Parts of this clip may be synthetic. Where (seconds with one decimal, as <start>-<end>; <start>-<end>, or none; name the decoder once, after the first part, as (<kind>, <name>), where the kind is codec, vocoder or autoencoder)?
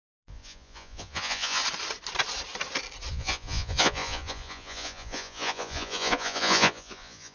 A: 0.0-1.6 (vocoder, Vocos); 3.1-7.3